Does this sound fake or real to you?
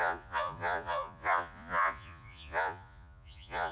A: fake